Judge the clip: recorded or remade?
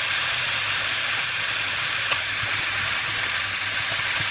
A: recorded